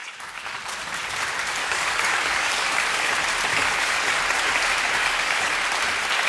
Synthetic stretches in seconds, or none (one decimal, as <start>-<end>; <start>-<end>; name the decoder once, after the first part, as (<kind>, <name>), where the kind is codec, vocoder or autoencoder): 0.0-0.6 (codec, DAC); 1.6-3.1; 3.5-4.2; 5.0-5.5